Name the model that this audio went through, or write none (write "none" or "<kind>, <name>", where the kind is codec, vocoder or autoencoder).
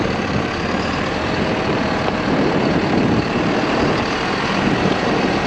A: vocoder, BigVGAN v2